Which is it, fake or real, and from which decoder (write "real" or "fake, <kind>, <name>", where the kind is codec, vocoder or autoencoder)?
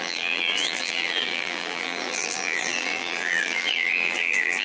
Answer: fake, vocoder, BigVGAN v2